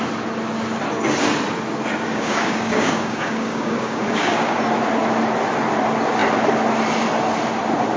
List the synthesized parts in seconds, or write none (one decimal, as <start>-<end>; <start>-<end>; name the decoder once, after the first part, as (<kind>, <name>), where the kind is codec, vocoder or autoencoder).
2.1-4.6 (codec, DAC)